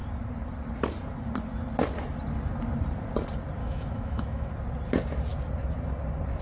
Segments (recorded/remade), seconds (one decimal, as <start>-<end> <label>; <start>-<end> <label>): 0.0-3.6 recorded; 3.6-4.5 remade; 4.5-6.4 recorded